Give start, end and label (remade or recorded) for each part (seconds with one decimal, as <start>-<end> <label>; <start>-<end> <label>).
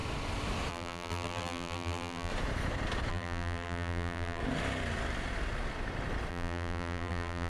0.0-0.7 recorded; 0.7-2.3 remade; 2.3-3.1 recorded; 3.1-4.4 remade; 4.4-6.3 recorded; 6.3-7.5 remade